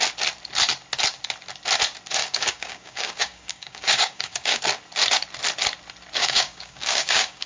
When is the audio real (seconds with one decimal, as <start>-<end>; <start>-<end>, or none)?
0.0-2.2; 4.6-6.2

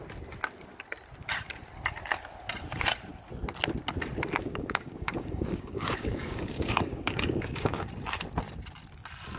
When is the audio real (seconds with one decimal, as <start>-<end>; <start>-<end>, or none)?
0.0-4.4; 7.9-9.4

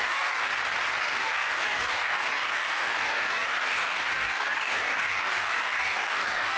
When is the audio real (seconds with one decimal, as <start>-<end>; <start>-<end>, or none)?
0.5-1.0

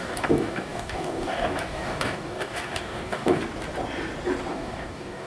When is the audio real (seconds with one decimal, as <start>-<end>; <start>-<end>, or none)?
3.4-4.5